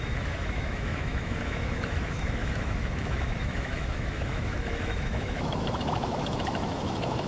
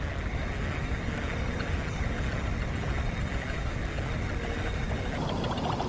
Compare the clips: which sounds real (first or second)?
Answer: second